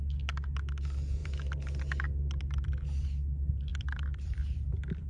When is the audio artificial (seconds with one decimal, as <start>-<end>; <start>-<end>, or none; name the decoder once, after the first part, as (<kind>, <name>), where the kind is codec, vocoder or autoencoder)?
3.7-5.1 (vocoder, BigVGAN v2)